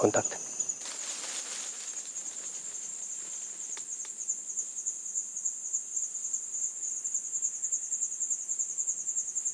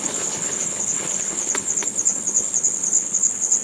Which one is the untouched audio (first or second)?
first